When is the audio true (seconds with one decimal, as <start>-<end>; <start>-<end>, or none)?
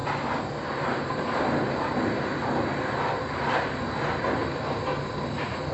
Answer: 0.0-5.7